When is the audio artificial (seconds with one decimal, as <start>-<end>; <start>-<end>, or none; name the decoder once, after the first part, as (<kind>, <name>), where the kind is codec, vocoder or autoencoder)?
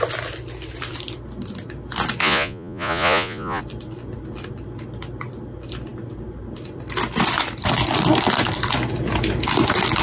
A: 2.2-3.6 (vocoder, Vocos)